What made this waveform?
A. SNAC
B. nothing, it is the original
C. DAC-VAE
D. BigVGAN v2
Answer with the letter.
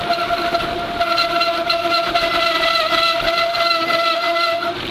B